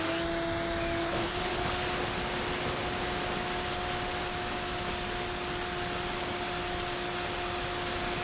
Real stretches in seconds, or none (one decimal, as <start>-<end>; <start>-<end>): 0.0-1.0; 1.7-8.2